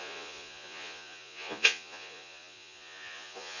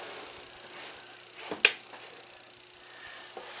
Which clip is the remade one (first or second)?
first